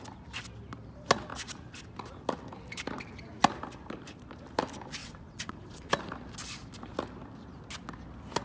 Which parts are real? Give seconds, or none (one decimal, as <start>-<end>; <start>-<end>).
0.0-5.0; 5.9-8.4